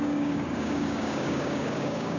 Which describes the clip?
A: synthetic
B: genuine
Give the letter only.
A